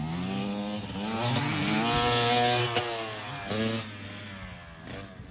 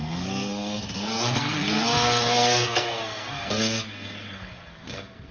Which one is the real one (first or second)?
first